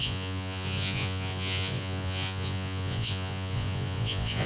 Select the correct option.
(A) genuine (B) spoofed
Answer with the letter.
B